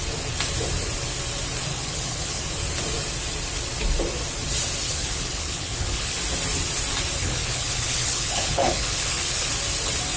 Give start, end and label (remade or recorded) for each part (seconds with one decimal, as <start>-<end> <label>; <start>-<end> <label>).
0.0-1.7 recorded; 1.7-2.4 remade; 2.4-4.8 recorded; 4.8-6.2 remade; 6.2-7.2 recorded; 7.2-9.5 remade; 9.5-10.2 recorded